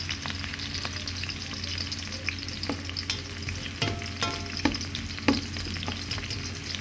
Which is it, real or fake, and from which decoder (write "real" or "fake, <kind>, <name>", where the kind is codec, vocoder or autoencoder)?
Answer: real